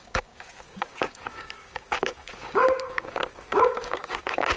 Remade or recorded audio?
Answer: remade